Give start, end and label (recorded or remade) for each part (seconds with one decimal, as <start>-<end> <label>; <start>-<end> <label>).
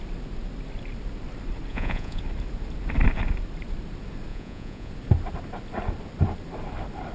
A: 0.0-1.7 recorded; 1.7-2.2 remade; 2.2-4.3 recorded; 4.3-4.9 remade; 4.9-7.1 recorded